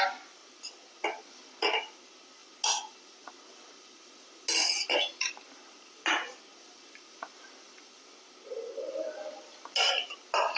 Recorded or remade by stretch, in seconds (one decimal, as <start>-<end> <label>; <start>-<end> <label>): 0.0-10.6 recorded